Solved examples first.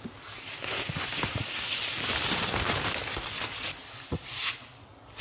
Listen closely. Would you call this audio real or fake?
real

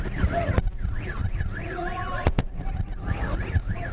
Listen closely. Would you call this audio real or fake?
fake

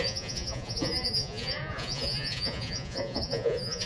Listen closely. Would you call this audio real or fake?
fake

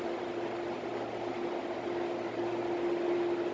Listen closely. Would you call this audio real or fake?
real